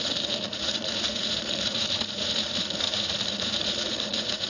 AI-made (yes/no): yes